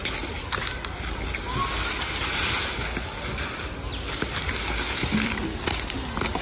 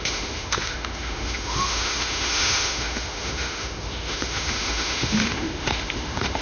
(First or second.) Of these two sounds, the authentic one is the first